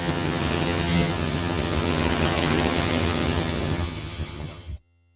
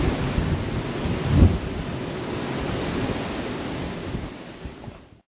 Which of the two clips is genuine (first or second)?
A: second